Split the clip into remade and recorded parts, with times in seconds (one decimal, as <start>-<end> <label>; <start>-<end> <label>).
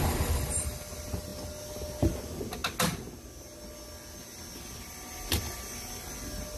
0.0-6.6 recorded